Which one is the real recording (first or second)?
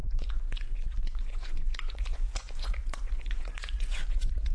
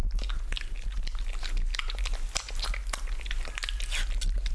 second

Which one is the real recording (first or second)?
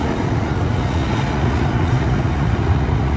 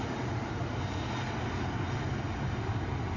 second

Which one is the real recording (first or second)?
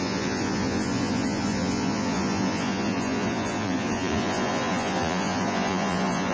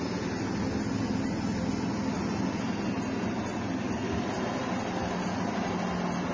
second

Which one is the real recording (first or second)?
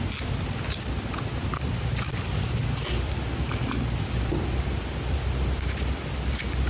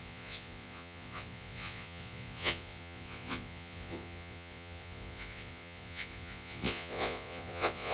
first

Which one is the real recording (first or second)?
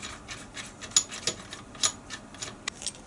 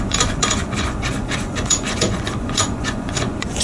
first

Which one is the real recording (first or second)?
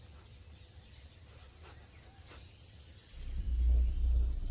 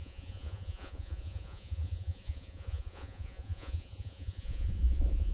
first